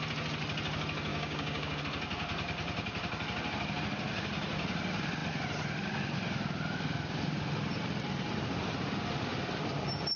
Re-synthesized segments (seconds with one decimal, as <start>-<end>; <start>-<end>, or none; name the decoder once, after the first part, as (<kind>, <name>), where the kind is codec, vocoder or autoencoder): 1.1-1.8 (codec, DAC)